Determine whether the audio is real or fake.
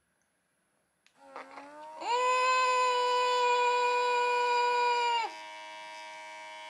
real